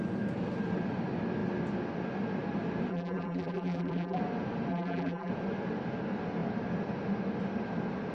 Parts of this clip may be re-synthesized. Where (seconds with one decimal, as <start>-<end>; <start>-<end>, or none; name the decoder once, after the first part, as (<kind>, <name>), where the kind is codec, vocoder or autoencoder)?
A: 2.9-4.2 (vocoder, BigVGAN v2); 4.7-5.3